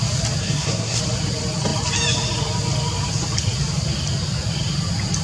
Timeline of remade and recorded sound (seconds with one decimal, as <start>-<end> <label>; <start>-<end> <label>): 0.0-0.4 recorded; 0.4-1.0 remade; 1.0-5.2 recorded